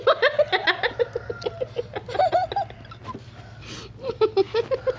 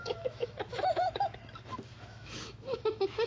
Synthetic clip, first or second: second